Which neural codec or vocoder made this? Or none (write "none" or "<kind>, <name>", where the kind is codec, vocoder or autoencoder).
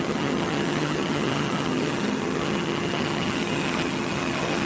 vocoder, HiFi-GAN